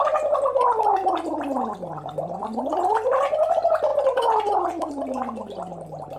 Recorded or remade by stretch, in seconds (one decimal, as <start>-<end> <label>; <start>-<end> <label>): 0.0-0.9 recorded; 0.9-3.2 remade; 3.2-6.2 recorded